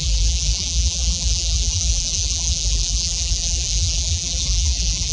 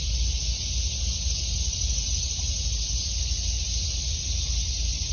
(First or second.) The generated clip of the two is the first